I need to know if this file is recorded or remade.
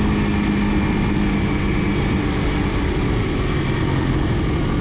recorded